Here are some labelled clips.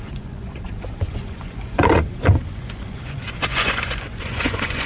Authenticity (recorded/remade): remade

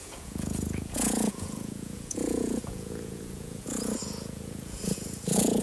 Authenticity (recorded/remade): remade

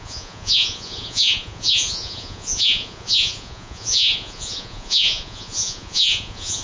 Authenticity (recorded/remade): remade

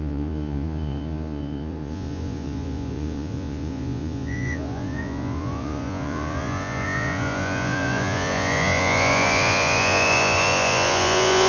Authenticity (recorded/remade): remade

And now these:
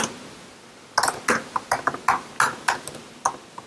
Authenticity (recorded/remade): recorded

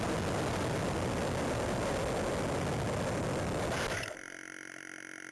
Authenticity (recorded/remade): recorded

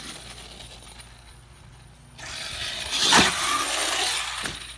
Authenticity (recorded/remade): recorded